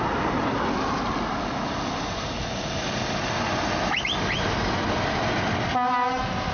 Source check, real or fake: real